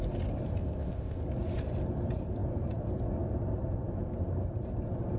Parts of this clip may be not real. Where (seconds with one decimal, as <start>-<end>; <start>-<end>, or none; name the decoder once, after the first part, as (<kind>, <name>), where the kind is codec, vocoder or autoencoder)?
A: 0.6-1.2 (codec, ZipCodec)